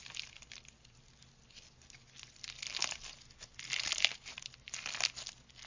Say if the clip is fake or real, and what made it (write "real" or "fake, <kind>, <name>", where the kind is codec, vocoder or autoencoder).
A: real